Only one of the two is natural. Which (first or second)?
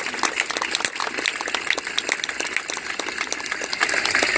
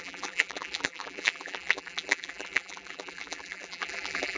first